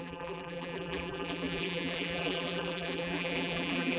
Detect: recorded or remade remade